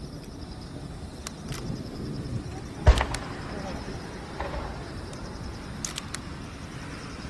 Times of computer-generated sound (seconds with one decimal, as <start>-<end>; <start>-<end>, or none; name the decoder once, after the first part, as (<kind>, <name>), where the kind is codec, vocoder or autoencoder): 0.0-7.3 (vocoder, BigVGAN v2)